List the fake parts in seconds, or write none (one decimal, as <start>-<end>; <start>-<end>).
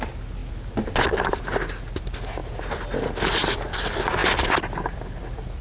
none